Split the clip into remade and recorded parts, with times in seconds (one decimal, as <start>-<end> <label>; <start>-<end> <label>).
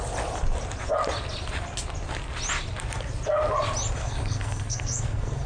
0.0-4.0 recorded; 4.0-5.5 remade